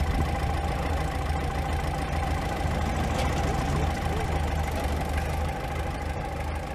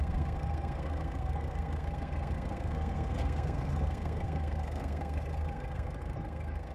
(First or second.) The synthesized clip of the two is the second